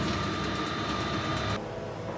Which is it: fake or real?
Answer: real